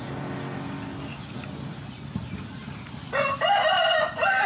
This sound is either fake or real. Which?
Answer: real